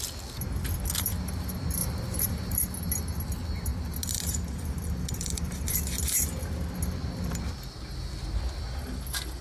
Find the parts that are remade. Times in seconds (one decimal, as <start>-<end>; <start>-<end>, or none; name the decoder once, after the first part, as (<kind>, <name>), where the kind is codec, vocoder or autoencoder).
1.8-2.6 (vocoder, BigVGAN v2)